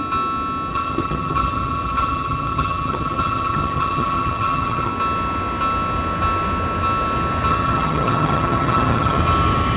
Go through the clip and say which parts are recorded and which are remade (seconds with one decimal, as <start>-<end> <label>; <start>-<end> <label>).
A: 0.0-0.7 recorded; 0.7-4.9 remade; 4.9-7.5 recorded; 7.5-9.2 remade; 9.2-9.8 recorded